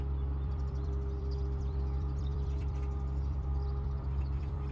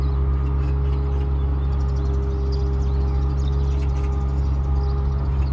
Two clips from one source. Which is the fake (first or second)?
first